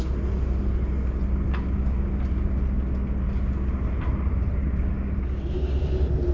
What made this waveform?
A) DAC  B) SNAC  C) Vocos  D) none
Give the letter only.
D